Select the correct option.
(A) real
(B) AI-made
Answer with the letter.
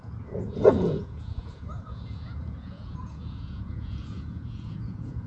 B